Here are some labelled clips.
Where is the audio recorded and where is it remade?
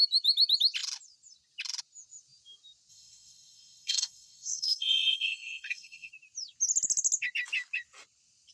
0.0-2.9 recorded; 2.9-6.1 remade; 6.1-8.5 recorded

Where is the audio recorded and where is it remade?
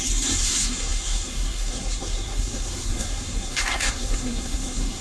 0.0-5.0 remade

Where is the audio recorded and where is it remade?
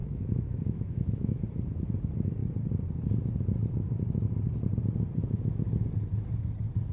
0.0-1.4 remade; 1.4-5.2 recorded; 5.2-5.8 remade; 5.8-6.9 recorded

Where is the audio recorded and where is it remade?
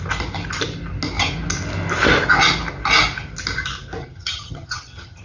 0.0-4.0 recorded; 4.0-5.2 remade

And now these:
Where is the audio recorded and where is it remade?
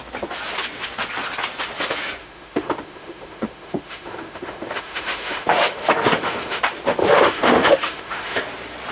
0.0-2.2 recorded; 2.2-6.6 remade; 6.6-7.0 recorded; 7.0-8.4 remade; 8.4-8.9 recorded